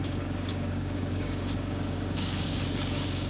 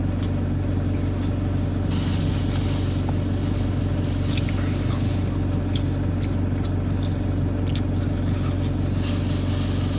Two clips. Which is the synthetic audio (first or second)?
first